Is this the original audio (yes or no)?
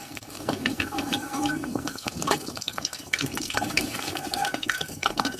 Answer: no